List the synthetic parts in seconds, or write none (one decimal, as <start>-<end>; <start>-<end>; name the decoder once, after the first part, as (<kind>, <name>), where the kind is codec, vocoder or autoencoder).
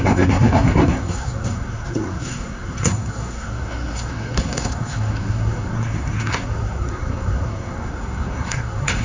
0.0-9.0 (codec, SNAC)